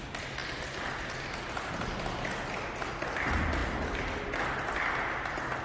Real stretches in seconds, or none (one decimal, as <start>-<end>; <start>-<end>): 0.0-5.6

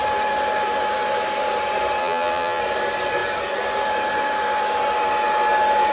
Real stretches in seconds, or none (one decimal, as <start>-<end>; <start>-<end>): 0.0-2.0; 2.6-5.9

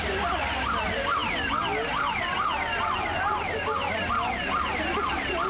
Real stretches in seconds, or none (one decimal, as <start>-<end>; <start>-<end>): 0.0-5.5

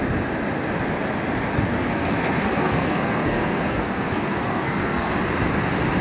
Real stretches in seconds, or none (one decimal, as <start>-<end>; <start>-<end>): 0.0-1.5; 5.1-6.0

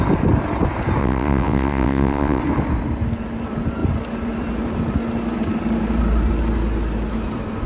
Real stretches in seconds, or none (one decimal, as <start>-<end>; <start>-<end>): 0.0-1.0; 2.4-7.7